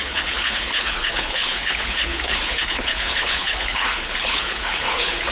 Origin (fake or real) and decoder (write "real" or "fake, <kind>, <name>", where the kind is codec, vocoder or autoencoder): fake, codec, HILCodec